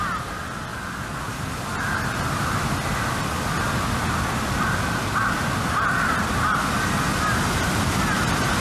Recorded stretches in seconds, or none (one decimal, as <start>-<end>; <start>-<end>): 0.0-8.6